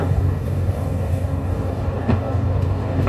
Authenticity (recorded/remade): remade